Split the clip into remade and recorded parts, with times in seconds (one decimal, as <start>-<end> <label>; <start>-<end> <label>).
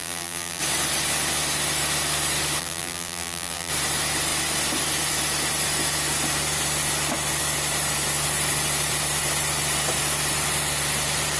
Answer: 0.0-0.6 remade; 0.6-2.6 recorded; 2.6-3.7 remade; 3.7-11.4 recorded